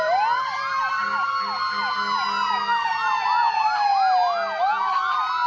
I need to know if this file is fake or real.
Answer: real